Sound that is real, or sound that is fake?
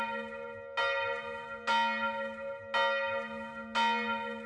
real